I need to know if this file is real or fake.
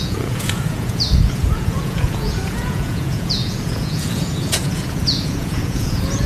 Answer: fake